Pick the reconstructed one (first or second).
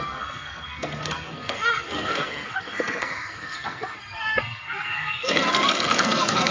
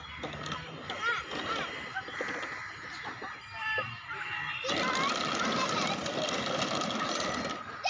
first